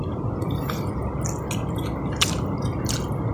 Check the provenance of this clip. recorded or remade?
recorded